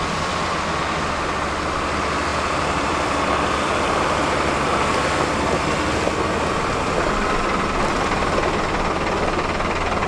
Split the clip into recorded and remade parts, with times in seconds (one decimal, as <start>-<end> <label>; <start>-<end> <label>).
0.0-2.3 recorded; 2.3-4.1 remade; 4.1-10.1 recorded

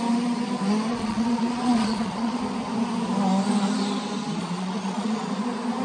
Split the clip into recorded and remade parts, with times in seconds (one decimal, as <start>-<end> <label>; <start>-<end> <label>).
0.0-0.9 recorded; 0.9-2.4 remade; 2.4-4.4 recorded; 4.4-5.2 remade; 5.2-5.8 recorded

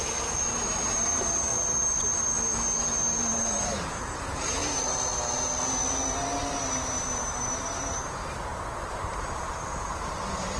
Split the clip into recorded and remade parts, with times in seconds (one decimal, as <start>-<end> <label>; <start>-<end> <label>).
0.0-1.5 remade; 1.5-3.2 recorded; 3.2-4.6 remade; 4.6-7.5 recorded; 7.5-10.6 remade